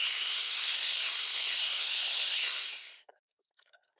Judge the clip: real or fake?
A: fake